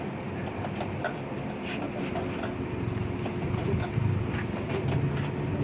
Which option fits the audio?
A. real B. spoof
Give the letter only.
A